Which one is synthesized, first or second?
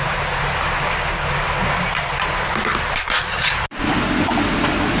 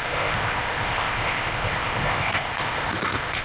second